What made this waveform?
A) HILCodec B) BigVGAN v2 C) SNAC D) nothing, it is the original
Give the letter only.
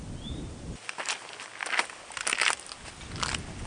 D